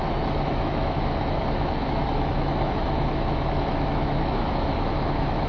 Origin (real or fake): fake